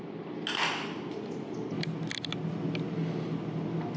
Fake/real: real